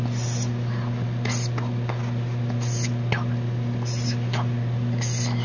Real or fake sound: real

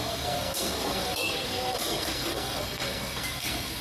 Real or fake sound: fake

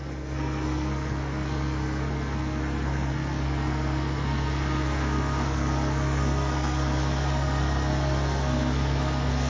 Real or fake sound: fake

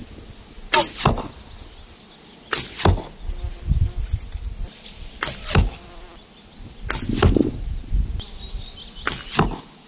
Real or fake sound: real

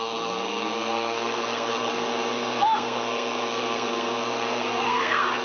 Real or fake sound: fake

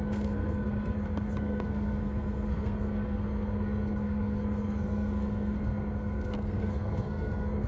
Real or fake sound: fake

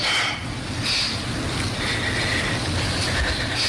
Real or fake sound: real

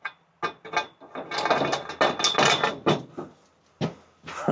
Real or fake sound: real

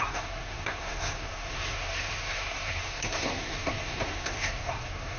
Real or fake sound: fake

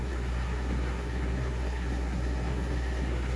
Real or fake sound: fake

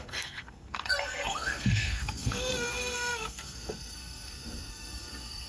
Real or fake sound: fake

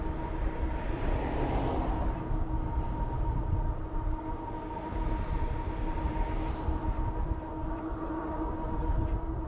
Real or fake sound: real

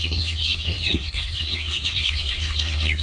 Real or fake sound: fake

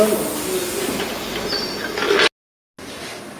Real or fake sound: real